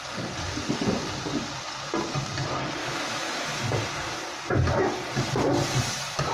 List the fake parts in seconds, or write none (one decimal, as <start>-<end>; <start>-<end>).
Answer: 2.8-3.6